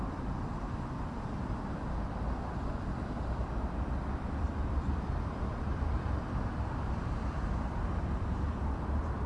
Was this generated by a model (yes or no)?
yes